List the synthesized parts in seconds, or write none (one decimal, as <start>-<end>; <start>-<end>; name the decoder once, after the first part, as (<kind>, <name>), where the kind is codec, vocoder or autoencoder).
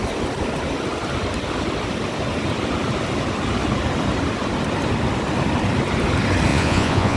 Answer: 6.5-7.2 (vocoder, Vocos)